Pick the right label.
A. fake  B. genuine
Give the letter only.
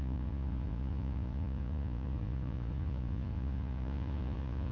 A